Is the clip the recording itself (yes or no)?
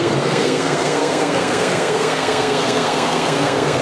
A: no